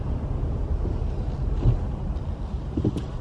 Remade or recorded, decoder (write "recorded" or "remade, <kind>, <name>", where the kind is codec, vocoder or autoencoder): recorded